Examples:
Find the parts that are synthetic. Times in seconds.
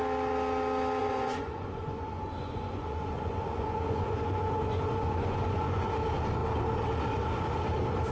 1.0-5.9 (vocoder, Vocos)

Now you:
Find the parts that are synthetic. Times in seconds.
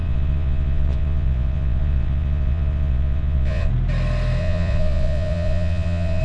0.0-3.7 (vocoder, Vocos); 4.4-6.2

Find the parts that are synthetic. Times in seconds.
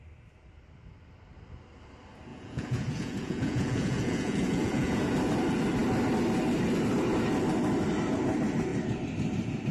2.3-5.1 (vocoder, Vocos)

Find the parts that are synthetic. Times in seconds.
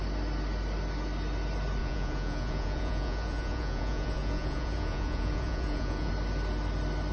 1.8-6.1 (vocoder, Vocos)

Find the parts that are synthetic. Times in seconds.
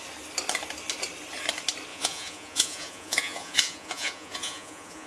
1.9-5.1 (vocoder, Vocos)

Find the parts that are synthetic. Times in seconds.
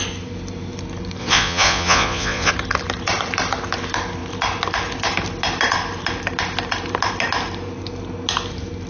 1.2-2.5 (vocoder, Vocos)